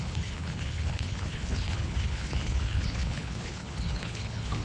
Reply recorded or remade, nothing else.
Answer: remade